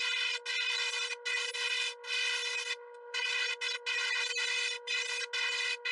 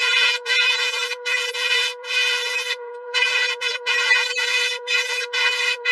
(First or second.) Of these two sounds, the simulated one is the second